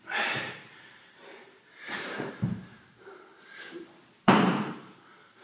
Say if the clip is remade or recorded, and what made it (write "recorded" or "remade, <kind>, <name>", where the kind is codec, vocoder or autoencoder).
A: remade, vocoder, BigVGAN v2